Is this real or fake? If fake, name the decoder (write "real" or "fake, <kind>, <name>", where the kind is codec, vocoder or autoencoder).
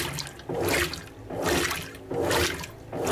real